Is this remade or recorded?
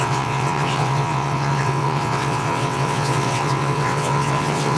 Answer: remade